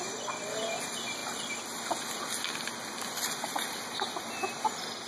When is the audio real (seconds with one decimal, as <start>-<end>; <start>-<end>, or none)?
0.0-5.1